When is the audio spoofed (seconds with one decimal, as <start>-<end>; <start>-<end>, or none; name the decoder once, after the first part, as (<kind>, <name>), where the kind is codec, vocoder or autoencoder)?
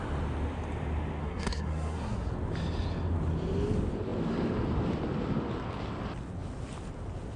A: 1.2-2.3 (codec, SNAC)